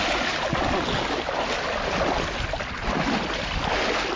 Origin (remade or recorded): recorded